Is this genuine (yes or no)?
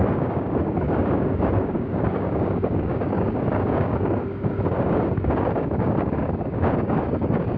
no